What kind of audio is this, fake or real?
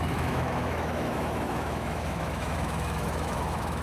fake